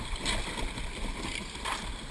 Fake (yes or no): no